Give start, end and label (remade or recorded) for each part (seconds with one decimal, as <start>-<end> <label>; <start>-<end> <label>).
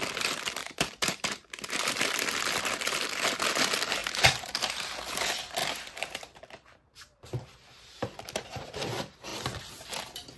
0.0-0.6 recorded; 0.6-1.9 remade; 1.9-4.0 recorded; 4.0-5.1 remade; 5.1-5.6 recorded; 5.6-8.8 remade; 8.8-10.4 recorded